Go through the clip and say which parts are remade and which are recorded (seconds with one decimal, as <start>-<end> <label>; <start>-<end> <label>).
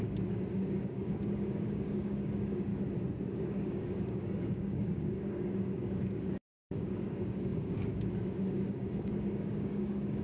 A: 0.0-2.7 remade; 2.7-3.3 recorded; 3.3-10.2 remade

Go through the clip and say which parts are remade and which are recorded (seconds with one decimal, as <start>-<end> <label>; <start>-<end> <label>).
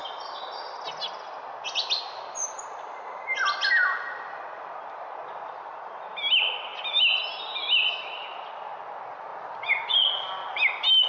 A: 0.0-11.1 recorded